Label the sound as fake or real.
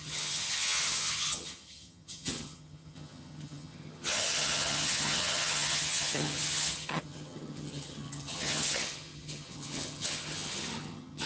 fake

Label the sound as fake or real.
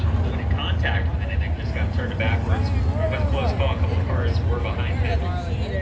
real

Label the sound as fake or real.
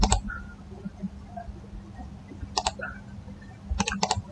real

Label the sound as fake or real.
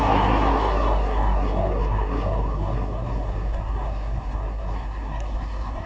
fake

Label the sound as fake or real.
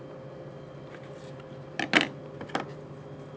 real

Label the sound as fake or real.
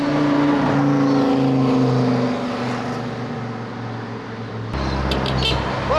real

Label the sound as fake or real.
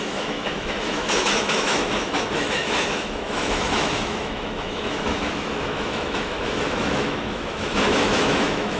fake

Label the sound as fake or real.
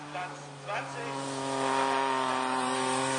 real